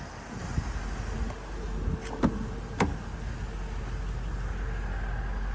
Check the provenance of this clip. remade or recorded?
recorded